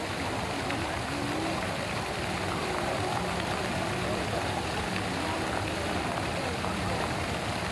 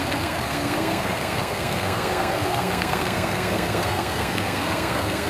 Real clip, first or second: first